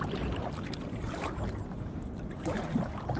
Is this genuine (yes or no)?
yes